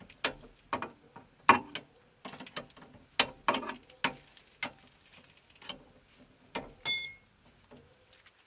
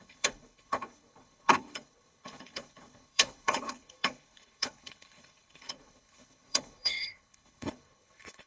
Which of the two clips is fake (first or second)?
second